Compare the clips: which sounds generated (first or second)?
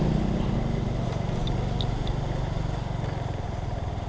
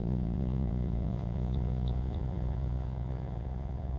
second